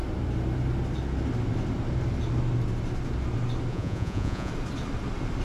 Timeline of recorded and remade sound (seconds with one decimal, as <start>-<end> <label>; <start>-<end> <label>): 0.0-3.7 recorded; 3.7-4.5 remade; 4.5-5.4 recorded